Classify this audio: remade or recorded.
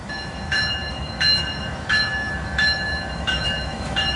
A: remade